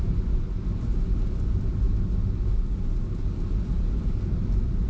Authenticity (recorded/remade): recorded